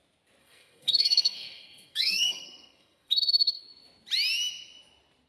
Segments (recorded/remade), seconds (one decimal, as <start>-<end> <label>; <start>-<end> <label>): 0.0-0.4 recorded; 0.4-3.6 remade; 3.6-5.3 recorded